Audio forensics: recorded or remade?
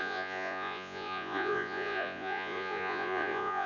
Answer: remade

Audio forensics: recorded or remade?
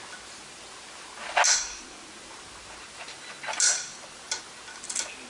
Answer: recorded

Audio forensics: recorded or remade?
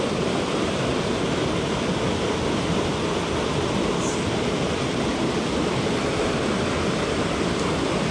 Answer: recorded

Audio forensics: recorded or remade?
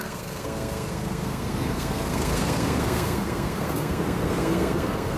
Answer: remade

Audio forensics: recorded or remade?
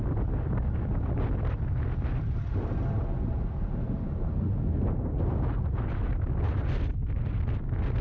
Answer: recorded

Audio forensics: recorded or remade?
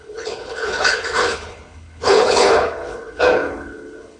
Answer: remade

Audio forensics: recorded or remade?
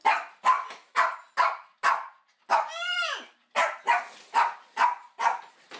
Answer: recorded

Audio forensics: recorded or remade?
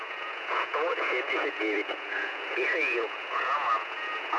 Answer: remade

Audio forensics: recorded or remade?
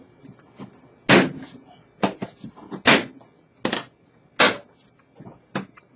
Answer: recorded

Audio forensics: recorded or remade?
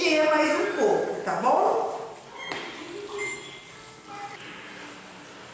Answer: recorded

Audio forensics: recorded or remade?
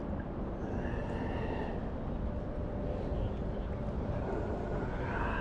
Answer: recorded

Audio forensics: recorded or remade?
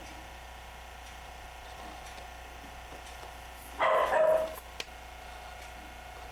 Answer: recorded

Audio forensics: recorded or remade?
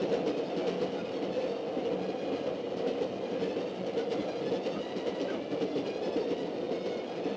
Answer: recorded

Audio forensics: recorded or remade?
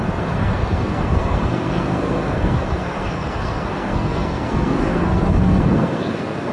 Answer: remade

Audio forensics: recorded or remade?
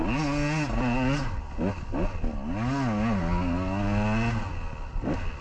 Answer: recorded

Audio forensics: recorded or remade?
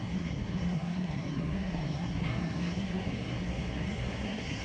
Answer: remade